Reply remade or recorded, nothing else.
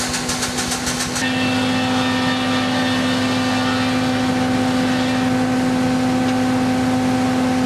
recorded